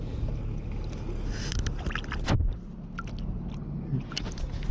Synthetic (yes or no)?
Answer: no